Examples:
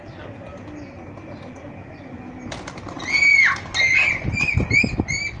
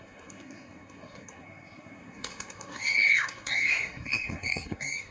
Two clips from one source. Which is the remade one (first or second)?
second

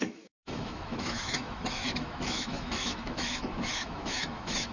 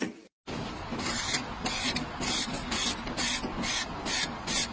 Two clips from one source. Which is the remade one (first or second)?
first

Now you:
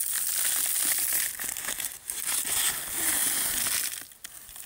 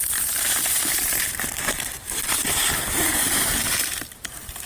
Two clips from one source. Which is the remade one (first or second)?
second